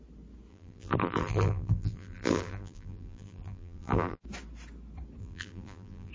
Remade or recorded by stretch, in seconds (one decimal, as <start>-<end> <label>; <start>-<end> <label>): 0.0-0.5 recorded; 0.5-4.2 remade; 4.2-5.2 recorded; 5.2-6.1 remade